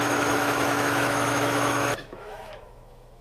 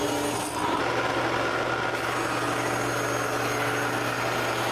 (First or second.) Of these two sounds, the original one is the second